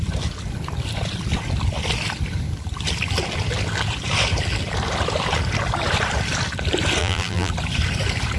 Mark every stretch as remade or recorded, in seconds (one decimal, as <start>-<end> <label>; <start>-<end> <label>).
0.0-7.0 recorded; 7.0-7.5 remade; 7.5-8.4 recorded